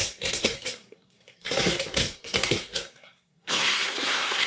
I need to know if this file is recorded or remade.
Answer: remade